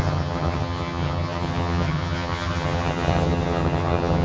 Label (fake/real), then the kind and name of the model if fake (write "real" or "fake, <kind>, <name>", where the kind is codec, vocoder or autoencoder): fake, vocoder, HiFi-GAN